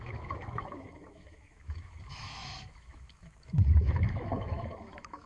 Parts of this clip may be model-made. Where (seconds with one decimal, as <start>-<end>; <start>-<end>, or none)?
0.0-5.3